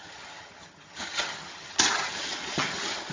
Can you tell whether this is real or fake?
fake